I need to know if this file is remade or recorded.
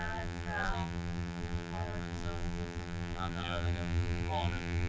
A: remade